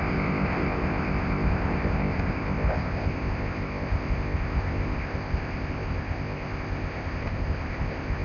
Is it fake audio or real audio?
fake